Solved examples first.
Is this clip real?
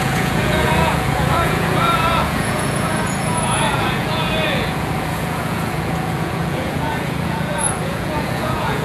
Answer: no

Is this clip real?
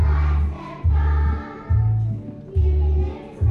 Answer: yes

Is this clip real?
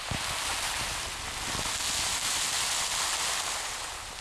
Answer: yes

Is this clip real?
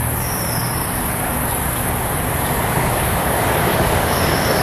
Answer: no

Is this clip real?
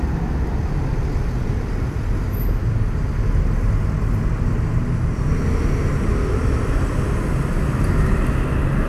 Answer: yes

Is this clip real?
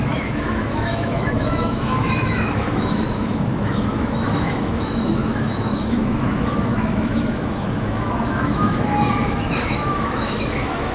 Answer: no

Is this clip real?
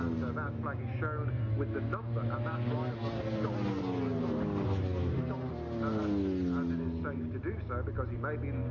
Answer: yes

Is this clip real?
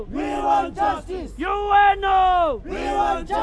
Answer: yes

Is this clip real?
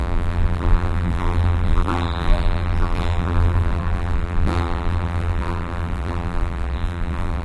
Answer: no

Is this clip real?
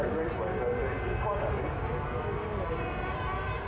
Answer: yes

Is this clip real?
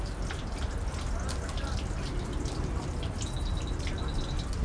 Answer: yes